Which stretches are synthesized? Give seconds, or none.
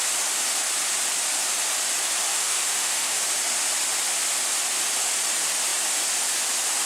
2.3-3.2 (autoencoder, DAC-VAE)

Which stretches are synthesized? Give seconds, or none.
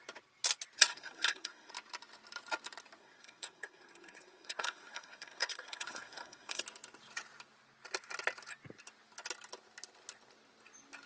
0.9-1.7 (codec, SNAC); 3.0-6.6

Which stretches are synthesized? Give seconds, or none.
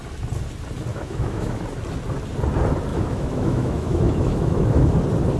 0.9-1.6 (autoencoder, DAC-VAE); 2.9-4.9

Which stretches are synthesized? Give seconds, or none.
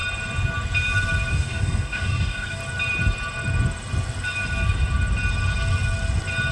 1.3-2.6 (codec, DAC)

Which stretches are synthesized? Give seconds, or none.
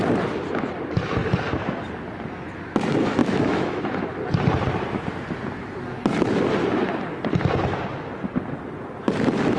3.2-3.8 (autoencoder, DAC-VAE)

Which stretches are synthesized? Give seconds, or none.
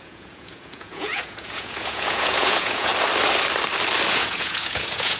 0.0-2.9 (vocoder, Vocos); 4.1-5.2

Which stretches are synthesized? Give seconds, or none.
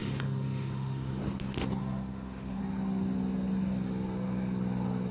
0.0-1.2 (autoencoder, DAC-VAE); 1.8-2.6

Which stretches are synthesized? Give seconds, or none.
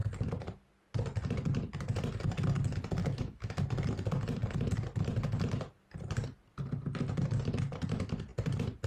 3.0-3.6 (autoencoder, DAC-VAE)